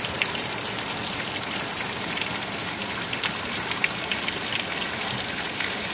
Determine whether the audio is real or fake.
real